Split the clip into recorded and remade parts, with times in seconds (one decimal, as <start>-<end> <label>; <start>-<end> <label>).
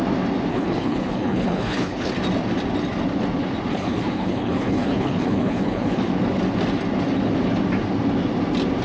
0.0-0.5 recorded; 0.5-2.1 remade; 2.1-3.7 recorded; 3.7-6.1 remade; 6.1-8.8 recorded